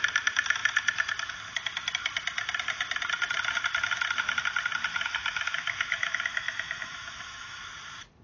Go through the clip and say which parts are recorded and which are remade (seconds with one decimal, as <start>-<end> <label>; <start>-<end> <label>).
0.0-4.9 recorded; 4.9-7.6 remade; 7.6-8.2 recorded